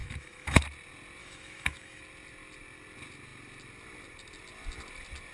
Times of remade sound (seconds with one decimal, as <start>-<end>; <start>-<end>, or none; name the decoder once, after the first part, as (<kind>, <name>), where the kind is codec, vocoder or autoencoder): 0.0-0.6 (autoencoder, DAC-VAE); 1.2-2.0